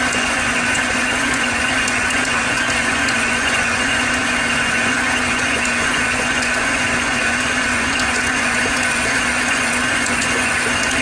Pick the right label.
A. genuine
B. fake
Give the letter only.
B